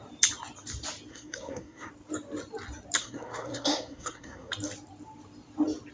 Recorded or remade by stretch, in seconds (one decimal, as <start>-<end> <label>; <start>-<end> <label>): 0.0-1.1 recorded; 1.1-1.9 remade; 1.9-3.0 recorded; 3.0-4.5 remade; 4.5-5.9 recorded